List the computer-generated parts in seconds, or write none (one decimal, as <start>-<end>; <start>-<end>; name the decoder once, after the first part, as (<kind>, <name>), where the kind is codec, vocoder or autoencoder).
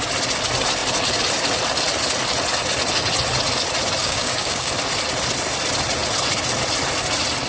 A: 4.0-4.7 (codec, DAC)